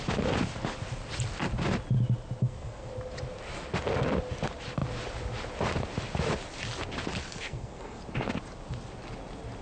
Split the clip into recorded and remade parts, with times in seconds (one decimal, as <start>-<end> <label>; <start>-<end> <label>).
0.0-2.4 recorded; 2.4-2.9 remade; 2.9-7.3 recorded; 7.3-8.0 remade; 8.0-9.6 recorded